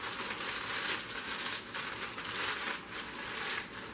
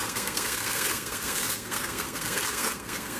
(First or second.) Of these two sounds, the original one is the first